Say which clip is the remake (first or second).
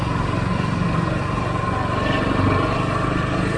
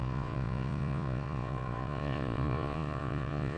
second